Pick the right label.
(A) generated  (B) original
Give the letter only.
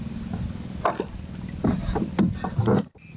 B